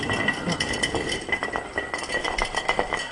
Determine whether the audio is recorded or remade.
recorded